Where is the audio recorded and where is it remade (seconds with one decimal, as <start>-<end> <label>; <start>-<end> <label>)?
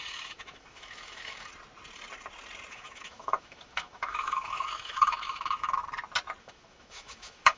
0.0-1.5 remade; 1.5-2.7 recorded; 2.7-5.8 remade; 5.8-6.4 recorded; 6.4-7.6 remade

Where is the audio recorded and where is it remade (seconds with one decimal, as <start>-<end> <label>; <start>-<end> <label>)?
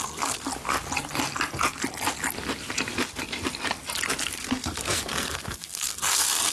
0.0-0.5 remade; 0.5-4.4 recorded; 4.4-6.5 remade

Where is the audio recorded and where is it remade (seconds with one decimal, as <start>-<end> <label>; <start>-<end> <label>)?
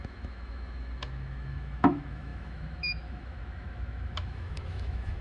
0.0-5.2 remade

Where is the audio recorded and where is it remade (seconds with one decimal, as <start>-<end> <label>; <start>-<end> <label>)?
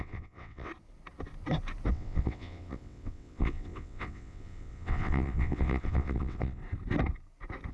0.0-0.7 remade; 0.7-1.9 recorded; 1.9-6.6 remade; 6.6-7.7 recorded